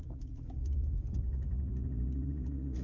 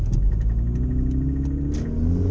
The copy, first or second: first